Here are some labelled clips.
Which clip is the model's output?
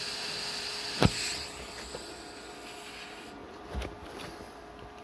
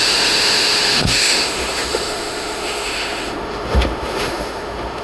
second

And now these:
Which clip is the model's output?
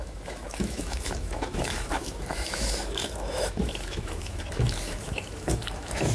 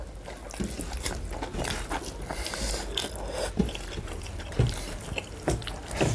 first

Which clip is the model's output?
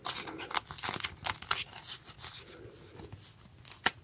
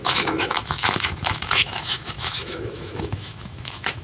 second